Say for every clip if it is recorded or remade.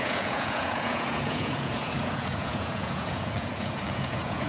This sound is remade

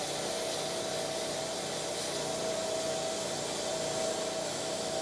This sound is recorded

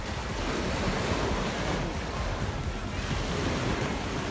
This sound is recorded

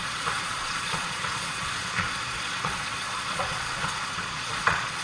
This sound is remade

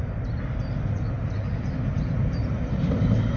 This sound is recorded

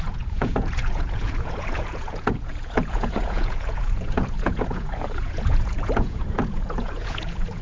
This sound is remade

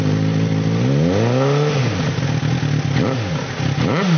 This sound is recorded